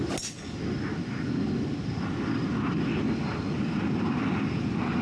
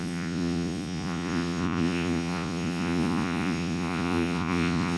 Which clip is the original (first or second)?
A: first